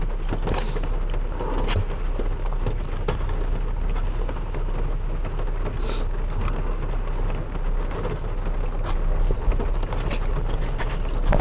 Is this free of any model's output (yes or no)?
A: yes